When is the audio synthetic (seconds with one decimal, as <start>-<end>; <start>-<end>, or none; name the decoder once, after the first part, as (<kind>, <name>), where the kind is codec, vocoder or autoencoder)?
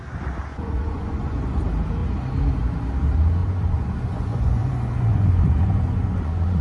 0.5-1.6 (vocoder, Vocos); 3.4-6.6